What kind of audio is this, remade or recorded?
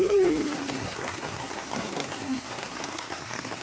remade